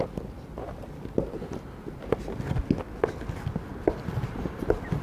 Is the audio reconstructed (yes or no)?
no